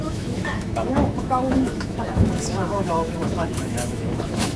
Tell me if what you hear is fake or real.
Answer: fake